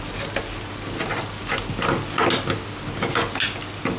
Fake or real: real